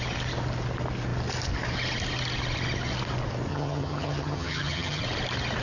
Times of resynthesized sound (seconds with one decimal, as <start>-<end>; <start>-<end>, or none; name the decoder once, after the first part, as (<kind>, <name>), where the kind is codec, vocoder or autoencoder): 3.5-5.0 (vocoder, HiFi-GAN)